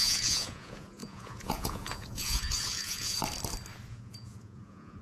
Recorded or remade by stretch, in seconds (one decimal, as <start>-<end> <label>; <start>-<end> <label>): 0.0-3.2 remade; 3.2-3.9 recorded; 3.9-5.0 remade